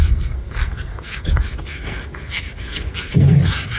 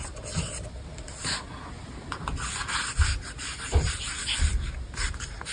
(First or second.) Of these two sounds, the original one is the second